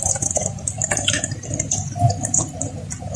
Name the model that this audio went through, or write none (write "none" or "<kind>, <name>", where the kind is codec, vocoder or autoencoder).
vocoder, BigVGAN v2